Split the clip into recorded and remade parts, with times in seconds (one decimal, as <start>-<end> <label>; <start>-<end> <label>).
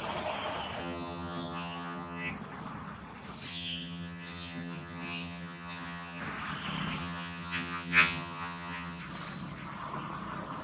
0.0-0.8 recorded; 0.8-2.3 remade; 2.3-3.5 recorded; 3.5-6.2 remade; 6.2-7.0 recorded; 7.0-9.0 remade; 9.0-10.6 recorded